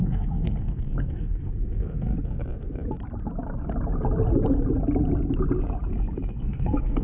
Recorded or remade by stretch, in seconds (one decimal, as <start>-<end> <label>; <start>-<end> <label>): 0.0-2.1 remade; 2.1-6.3 recorded; 6.3-7.0 remade